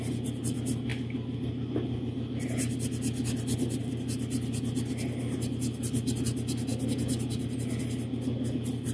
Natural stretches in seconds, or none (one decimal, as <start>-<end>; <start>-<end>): 0.0-8.9